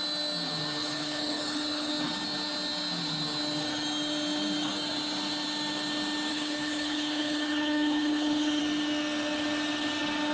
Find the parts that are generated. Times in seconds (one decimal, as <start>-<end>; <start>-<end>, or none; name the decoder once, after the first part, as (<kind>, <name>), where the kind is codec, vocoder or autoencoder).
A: 0.8-1.9 (codec, HILCodec); 6.3-8.6